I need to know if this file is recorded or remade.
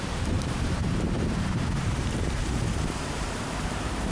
remade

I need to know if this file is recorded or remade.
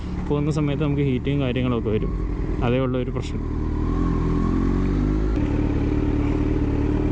recorded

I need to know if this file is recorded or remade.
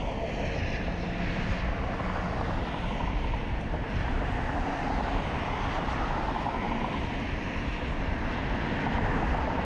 recorded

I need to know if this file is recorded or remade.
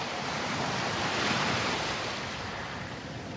recorded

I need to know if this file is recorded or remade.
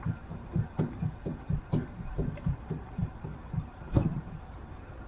remade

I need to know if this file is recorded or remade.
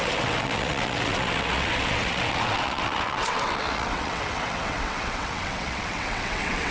remade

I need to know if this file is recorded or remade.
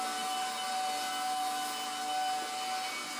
recorded